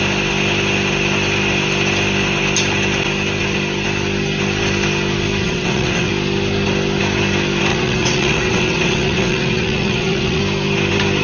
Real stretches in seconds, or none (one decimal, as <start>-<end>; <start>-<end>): 0.0-5.4; 6.1-7.7; 10.4-11.2